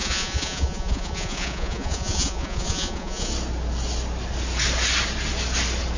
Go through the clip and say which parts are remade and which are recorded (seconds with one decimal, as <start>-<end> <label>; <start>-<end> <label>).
0.0-3.3 remade; 3.3-6.0 recorded